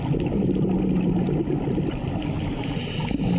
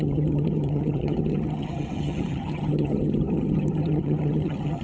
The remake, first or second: second